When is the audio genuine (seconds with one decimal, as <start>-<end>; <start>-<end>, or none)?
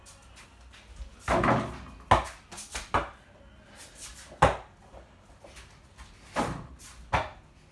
0.0-7.7